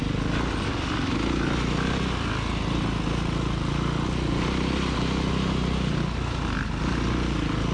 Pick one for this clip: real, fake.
real